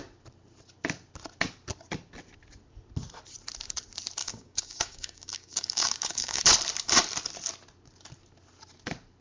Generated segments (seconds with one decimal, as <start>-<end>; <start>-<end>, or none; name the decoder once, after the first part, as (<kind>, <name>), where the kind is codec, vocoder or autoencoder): 4.2-6.4 (codec, DAC)